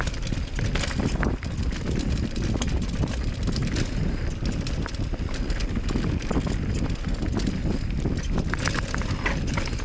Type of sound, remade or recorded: recorded